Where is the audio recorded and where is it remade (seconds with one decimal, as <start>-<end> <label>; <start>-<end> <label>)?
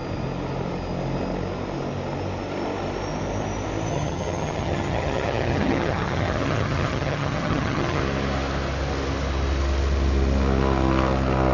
0.0-3.9 recorded; 3.9-8.0 remade; 8.0-11.5 recorded